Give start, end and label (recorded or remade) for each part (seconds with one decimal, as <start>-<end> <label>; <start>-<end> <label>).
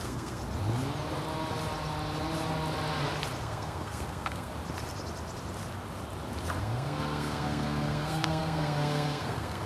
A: 0.0-0.4 remade; 0.4-3.4 recorded; 3.4-4.5 remade; 4.5-6.6 recorded; 6.6-9.7 remade